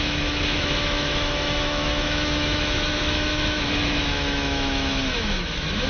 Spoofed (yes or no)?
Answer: yes